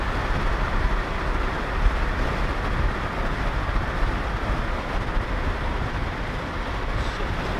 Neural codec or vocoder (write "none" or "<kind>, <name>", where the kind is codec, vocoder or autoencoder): none